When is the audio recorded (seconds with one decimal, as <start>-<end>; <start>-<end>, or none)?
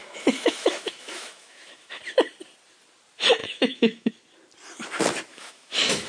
2.0-3.4; 4.1-5.3